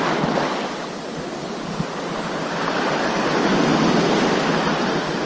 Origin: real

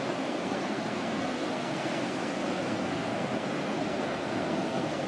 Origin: fake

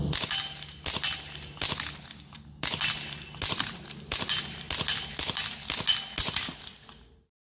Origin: real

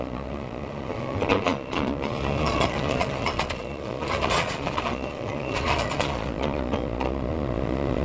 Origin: fake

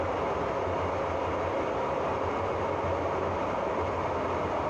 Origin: real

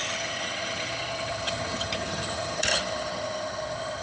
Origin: fake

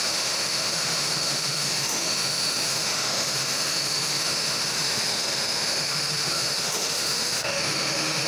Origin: fake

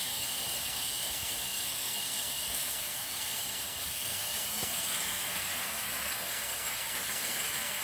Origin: fake